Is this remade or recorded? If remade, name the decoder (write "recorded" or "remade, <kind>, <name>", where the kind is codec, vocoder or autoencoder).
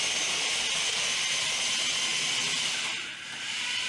recorded